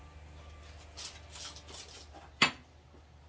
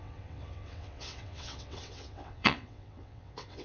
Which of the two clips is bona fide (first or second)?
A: first